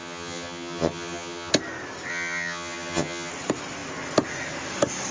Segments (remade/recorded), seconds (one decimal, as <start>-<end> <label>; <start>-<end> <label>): 0.0-1.5 remade; 1.5-2.1 recorded; 2.1-3.3 remade; 3.3-5.1 recorded